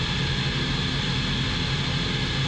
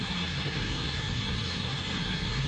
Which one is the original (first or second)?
first